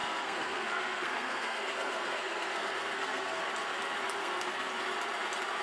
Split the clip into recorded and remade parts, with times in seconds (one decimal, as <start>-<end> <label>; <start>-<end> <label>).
0.0-3.4 remade; 3.4-4.2 recorded; 4.2-4.7 remade; 4.7-5.6 recorded